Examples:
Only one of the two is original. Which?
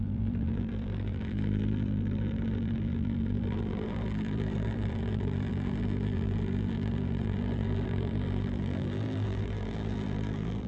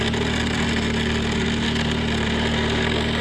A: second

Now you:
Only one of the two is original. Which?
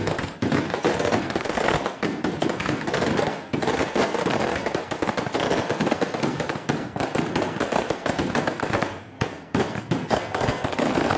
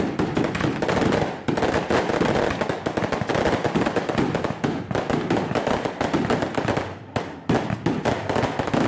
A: second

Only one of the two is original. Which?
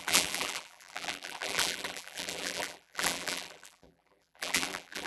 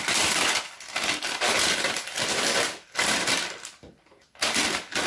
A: second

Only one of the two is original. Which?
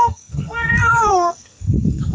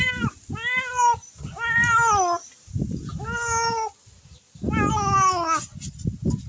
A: second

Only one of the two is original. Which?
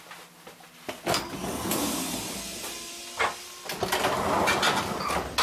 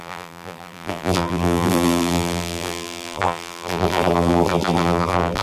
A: first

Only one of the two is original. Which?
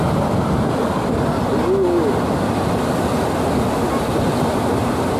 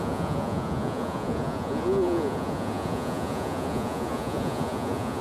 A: first